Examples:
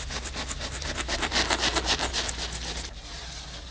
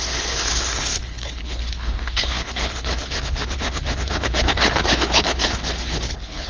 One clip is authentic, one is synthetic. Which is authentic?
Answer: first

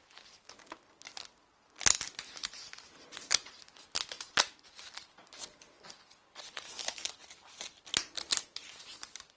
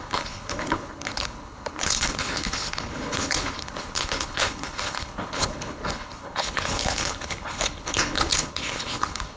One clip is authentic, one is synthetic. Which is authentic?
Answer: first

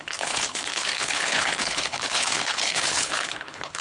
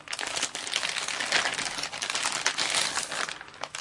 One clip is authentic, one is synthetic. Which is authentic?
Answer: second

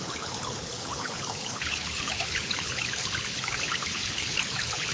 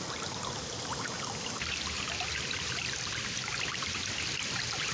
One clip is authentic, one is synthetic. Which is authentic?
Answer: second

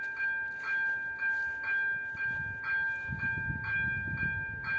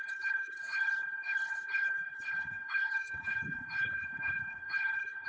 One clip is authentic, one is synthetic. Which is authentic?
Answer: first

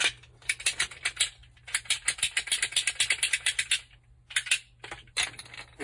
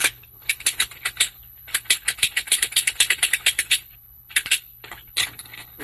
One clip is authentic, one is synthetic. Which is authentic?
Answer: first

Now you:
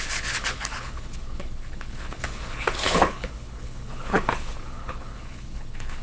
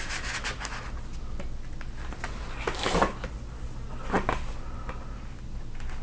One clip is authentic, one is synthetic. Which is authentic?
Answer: second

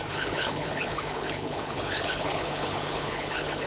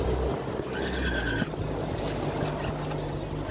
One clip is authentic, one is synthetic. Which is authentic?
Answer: second